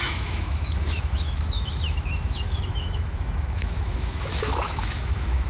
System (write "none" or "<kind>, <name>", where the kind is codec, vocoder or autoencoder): autoencoder, DAC-VAE